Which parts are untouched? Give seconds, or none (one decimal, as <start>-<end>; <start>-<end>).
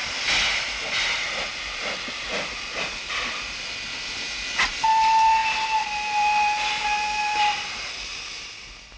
0.0-9.0